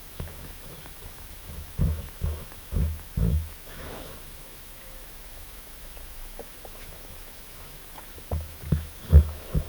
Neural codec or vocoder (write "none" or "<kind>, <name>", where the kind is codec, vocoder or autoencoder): autoencoder, DAC-VAE